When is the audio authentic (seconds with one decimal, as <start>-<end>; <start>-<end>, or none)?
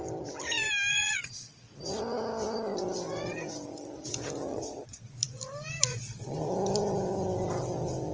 0.0-0.9; 1.7-4.5; 5.1-5.9; 6.5-8.1